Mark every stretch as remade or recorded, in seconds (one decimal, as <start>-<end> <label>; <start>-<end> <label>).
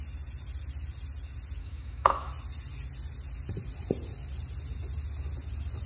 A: 0.0-1.6 recorded; 1.6-2.3 remade; 2.3-5.9 recorded